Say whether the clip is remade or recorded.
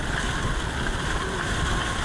recorded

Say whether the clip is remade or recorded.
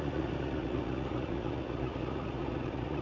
remade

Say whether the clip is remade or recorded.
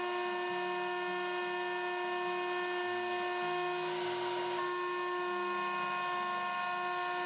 recorded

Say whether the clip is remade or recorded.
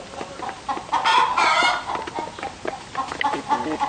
recorded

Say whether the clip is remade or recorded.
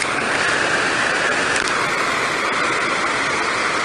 recorded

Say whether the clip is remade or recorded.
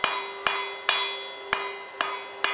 recorded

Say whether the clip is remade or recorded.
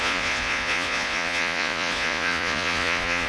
remade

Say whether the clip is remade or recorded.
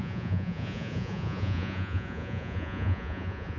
remade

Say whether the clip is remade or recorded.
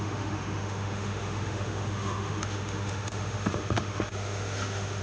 remade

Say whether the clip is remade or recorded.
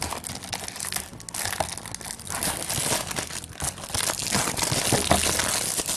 recorded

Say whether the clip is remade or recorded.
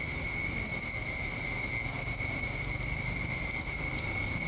recorded